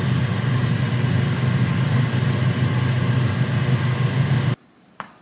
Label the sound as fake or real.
real